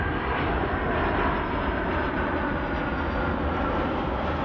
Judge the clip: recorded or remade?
recorded